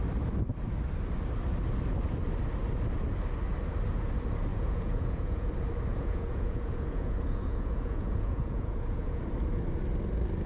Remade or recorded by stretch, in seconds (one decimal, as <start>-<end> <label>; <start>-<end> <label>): 0.0-4.5 recorded; 4.5-5.5 remade; 5.5-5.9 recorded; 5.9-9.2 remade; 9.2-10.5 recorded

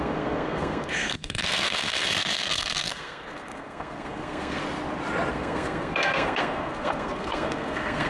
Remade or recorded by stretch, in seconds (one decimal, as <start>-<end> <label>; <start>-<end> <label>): 0.0-4.6 remade; 4.6-5.3 recorded; 5.3-8.1 remade

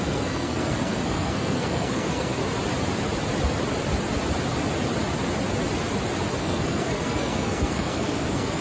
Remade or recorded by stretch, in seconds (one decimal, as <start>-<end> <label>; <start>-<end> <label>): 0.0-2.4 remade; 2.4-6.4 recorded; 6.4-8.6 remade

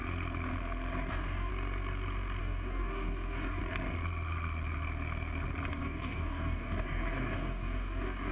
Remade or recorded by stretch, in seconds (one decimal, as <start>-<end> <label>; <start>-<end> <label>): 0.0-1.1 recorded; 1.1-1.5 remade; 1.5-2.4 recorded; 2.4-3.6 remade; 3.6-5.7 recorded; 5.7-8.3 remade

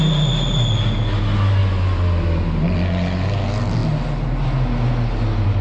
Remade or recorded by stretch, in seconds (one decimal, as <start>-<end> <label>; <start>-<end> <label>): 0.0-5.6 recorded

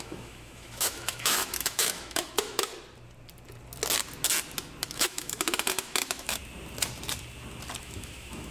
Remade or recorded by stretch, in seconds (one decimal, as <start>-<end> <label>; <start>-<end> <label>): 0.0-2.7 remade; 2.7-4.9 recorded; 4.9-6.4 remade; 6.4-7.8 recorded; 7.8-8.5 remade

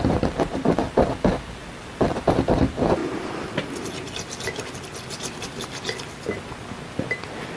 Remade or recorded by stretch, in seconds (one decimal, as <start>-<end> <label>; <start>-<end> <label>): 0.0-3.0 recorded; 3.0-3.6 remade; 3.6-7.6 recorded

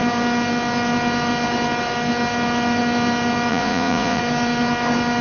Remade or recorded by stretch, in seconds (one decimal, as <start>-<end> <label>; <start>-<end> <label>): 0.0-3.5 recorded; 3.5-4.2 remade; 4.2-5.2 recorded